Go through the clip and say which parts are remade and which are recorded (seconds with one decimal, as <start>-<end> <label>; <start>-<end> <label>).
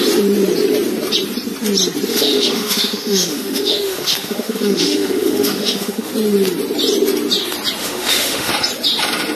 0.0-2.1 recorded; 2.1-6.1 remade; 6.1-7.8 recorded; 7.8-8.5 remade; 8.5-9.3 recorded